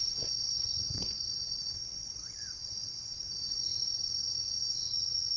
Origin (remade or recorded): remade